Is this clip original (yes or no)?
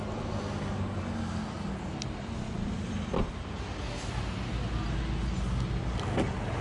yes